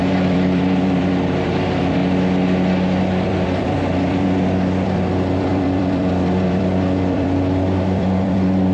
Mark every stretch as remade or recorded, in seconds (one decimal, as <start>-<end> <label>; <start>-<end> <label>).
0.0-2.0 remade; 2.0-3.0 recorded; 3.0-8.7 remade